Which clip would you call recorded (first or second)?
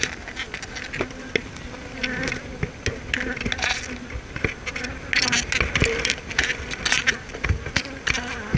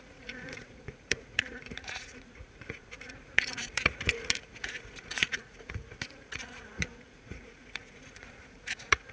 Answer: first